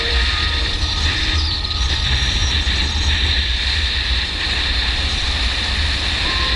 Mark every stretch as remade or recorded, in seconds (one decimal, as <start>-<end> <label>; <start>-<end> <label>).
0.0-2.4 remade; 2.4-6.6 recorded